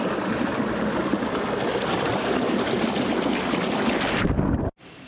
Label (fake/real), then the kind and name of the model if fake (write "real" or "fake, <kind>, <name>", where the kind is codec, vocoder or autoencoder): real